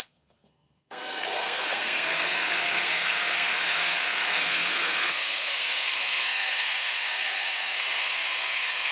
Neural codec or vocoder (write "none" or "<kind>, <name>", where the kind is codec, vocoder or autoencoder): codec, SNAC